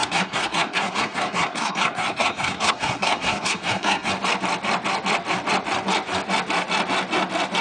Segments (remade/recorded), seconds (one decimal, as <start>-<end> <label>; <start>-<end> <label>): 0.0-4.1 remade; 4.1-7.6 recorded